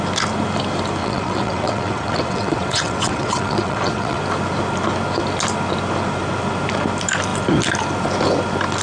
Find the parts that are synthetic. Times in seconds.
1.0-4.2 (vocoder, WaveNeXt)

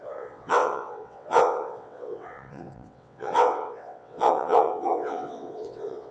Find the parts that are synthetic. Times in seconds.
0.0-6.1 (vocoder, WaveNeXt)

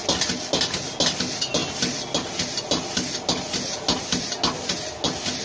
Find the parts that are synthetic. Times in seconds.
none

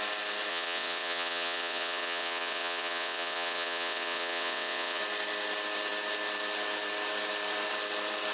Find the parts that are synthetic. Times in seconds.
0.5-5.0 (vocoder, WaveNeXt)